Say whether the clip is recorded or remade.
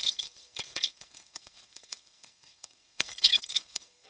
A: remade